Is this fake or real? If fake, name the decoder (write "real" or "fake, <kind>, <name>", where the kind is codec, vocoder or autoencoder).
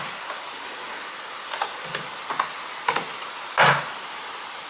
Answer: real